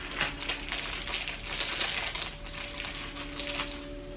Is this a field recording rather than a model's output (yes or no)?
yes